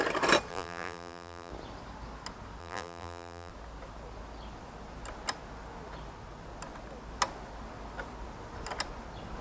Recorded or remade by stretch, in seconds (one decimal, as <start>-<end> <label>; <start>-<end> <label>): 0.0-0.5 recorded; 0.5-1.5 remade; 1.5-2.6 recorded; 2.6-3.5 remade; 3.5-9.4 recorded